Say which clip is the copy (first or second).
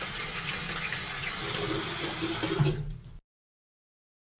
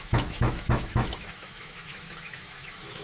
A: second